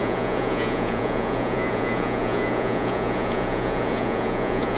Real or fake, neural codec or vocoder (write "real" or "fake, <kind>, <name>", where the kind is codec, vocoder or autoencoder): fake, vocoder, Vocos